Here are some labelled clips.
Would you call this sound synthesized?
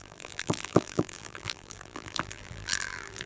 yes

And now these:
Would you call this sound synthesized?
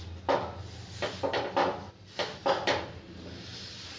yes